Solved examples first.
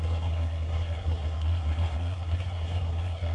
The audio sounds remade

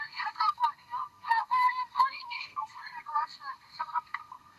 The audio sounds remade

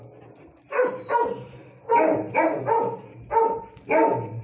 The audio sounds recorded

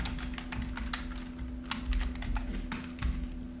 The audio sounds recorded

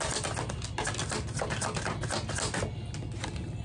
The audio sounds recorded